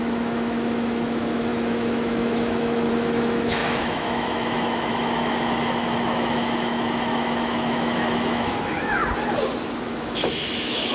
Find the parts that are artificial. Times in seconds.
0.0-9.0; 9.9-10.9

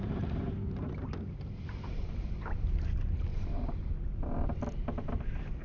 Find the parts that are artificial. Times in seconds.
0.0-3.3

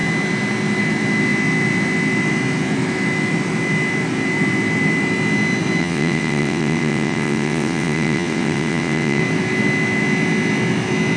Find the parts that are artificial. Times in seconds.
5.8-9.2

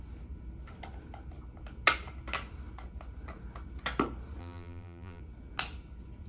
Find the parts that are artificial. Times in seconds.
4.4-5.2

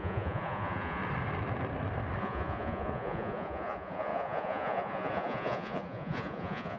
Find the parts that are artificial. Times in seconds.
0.0-1.0; 2.2-6.8